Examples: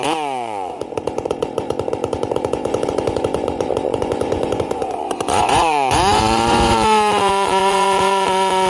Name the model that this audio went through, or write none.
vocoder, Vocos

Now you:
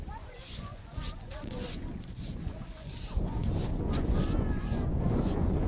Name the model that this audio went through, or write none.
vocoder, Vocos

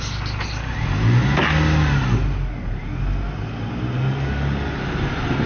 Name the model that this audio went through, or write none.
none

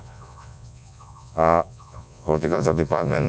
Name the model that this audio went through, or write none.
vocoder, Vocos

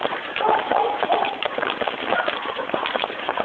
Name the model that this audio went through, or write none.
vocoder, Vocos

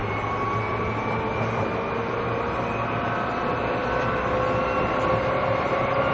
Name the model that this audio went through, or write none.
none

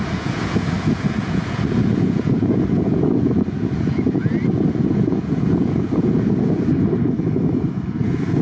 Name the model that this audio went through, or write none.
vocoder, Vocos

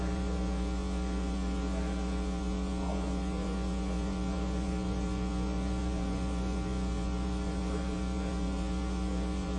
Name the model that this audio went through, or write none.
vocoder, Vocos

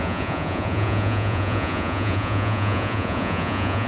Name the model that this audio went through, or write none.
vocoder, Vocos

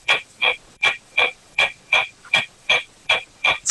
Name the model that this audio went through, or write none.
vocoder, Vocos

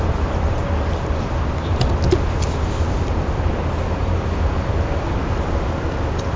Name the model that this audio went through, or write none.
none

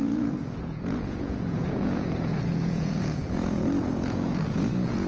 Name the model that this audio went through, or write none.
vocoder, Vocos